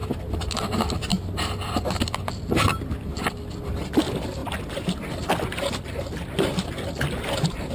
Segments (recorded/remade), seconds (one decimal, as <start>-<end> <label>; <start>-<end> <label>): 0.0-7.7 recorded